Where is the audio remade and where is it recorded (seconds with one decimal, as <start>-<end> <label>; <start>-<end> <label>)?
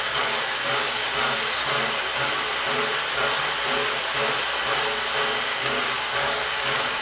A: 0.0-1.0 remade; 1.0-5.2 recorded; 5.2-7.0 remade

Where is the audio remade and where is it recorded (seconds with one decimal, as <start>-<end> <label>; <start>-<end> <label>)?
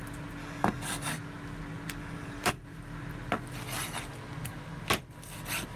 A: 0.0-0.4 recorded; 0.4-1.1 remade; 1.1-2.0 recorded; 2.0-2.5 remade; 2.5-5.8 recorded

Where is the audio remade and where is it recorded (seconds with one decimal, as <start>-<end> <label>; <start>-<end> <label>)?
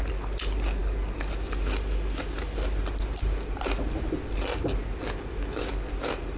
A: 0.0-6.4 recorded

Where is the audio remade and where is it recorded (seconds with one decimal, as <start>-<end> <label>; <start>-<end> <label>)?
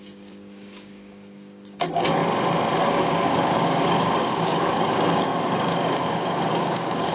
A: 0.0-2.2 remade; 2.2-2.8 recorded; 2.8-7.1 remade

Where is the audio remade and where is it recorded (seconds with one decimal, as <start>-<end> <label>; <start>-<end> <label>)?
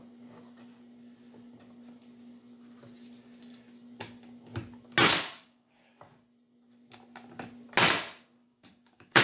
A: 0.0-5.1 recorded; 5.1-5.9 remade; 5.9-8.5 recorded; 8.5-9.2 remade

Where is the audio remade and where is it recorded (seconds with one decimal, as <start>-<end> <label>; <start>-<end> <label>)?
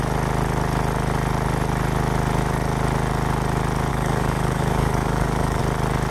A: 0.0-3.9 recorded; 3.9-5.6 remade; 5.6-6.1 recorded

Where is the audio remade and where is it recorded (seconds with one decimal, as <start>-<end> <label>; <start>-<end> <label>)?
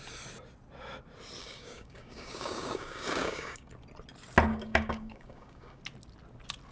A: 0.0-1.4 recorded; 1.4-3.7 remade; 3.7-4.5 recorded; 4.5-5.8 remade; 5.8-6.7 recorded